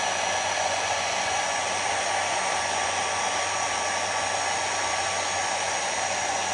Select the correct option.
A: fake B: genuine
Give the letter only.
A